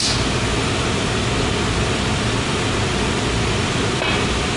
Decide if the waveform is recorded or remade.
recorded